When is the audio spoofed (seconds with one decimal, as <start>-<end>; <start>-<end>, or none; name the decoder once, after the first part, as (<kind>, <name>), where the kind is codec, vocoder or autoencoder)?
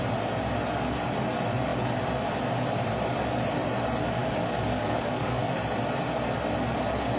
4.2-5.4 (codec, DAC)